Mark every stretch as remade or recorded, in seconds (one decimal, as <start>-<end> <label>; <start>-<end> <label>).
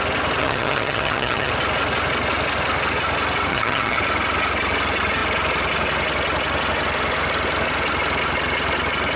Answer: 0.0-0.4 recorded; 0.4-1.5 remade; 1.5-3.5 recorded; 3.5-4.0 remade; 4.0-9.2 recorded